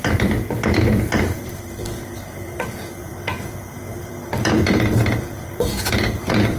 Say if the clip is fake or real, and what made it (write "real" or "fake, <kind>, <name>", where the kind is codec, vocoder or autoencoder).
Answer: fake, vocoder, BigVGAN v2